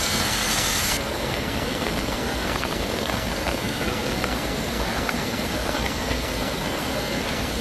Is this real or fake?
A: fake